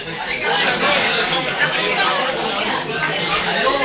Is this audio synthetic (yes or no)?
yes